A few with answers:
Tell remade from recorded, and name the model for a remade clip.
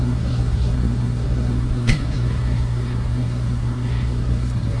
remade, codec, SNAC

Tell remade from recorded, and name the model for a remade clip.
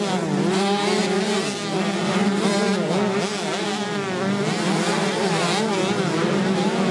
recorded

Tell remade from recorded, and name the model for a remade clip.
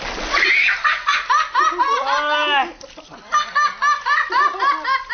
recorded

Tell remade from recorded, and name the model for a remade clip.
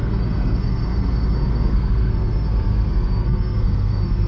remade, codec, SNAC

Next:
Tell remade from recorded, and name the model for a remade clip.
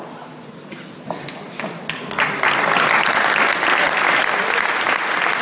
recorded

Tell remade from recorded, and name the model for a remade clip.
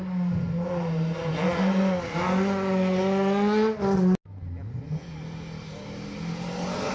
recorded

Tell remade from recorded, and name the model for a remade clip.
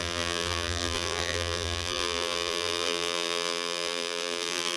remade, vocoder, BigVGAN v2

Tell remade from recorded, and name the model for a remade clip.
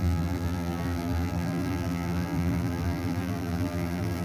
remade, vocoder, BigVGAN v2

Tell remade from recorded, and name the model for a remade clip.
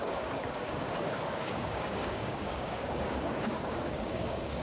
remade, codec, DAC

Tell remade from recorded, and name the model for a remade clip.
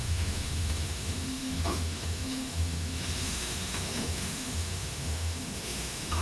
remade, autoencoder, DAC-VAE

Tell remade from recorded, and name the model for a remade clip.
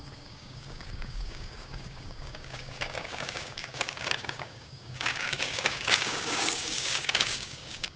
remade, codec, DAC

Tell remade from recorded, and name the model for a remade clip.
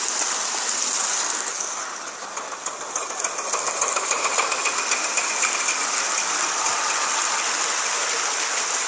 recorded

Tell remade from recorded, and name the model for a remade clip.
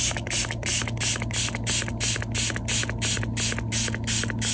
recorded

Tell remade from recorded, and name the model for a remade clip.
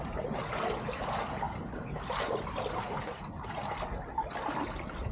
recorded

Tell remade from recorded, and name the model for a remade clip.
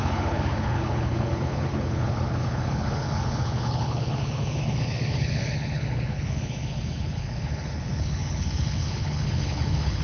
remade, codec, HILCodec